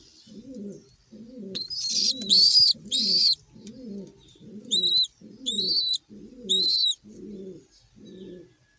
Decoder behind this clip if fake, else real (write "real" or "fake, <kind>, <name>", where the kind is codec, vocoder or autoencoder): real